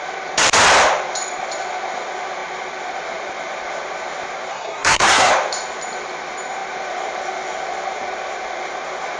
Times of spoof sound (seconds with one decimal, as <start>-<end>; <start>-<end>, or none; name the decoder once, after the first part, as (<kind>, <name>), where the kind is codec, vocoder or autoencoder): 4.5-5.3 (codec, SNAC)